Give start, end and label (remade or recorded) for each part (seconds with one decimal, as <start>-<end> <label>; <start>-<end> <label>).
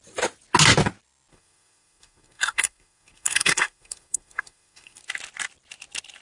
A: 0.0-1.3 recorded; 1.3-5.0 remade; 5.0-6.2 recorded